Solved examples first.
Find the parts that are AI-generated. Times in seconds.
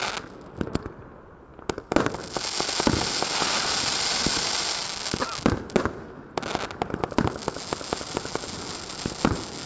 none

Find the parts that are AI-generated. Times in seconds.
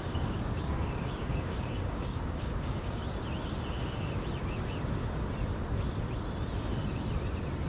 0.0-3.0 (codec, DAC)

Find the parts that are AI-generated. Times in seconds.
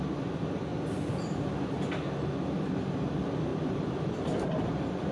3.5-5.1 (vocoder, BigVGAN v2)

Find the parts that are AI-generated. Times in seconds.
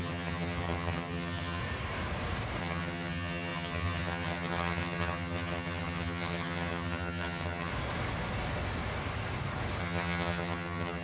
0.0-1.6 (vocoder, HiFi-GAN); 2.6-7.7; 9.8-11.0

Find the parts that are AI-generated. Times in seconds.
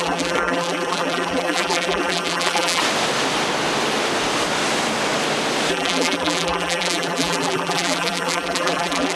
0.0-2.8 (vocoder, BigVGAN v2); 5.7-9.2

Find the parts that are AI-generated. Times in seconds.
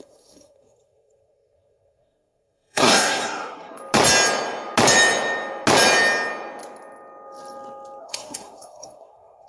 0.0-3.8 (codec, SNAC); 8.0-9.5